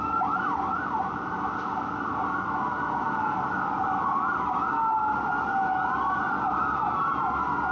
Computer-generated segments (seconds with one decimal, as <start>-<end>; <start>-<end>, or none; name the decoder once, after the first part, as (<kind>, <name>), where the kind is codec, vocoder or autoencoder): 0.7-1.3 (vocoder, BigVGAN v2)